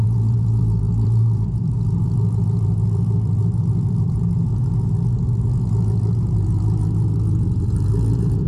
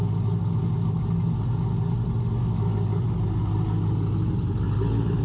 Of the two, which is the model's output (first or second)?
first